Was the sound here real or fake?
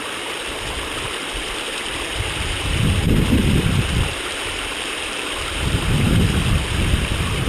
fake